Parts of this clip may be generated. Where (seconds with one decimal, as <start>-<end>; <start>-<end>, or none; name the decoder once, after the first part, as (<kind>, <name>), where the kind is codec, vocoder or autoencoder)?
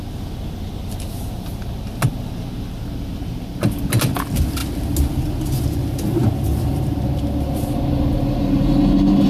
none